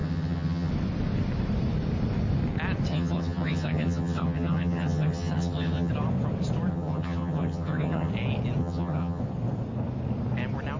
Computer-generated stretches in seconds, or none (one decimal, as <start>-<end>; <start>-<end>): 0.0-0.7; 2.9-5.9; 6.7-8.1; 8.6-9.2